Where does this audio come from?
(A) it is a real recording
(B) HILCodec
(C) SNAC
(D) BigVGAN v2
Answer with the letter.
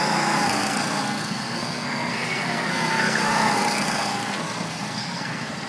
C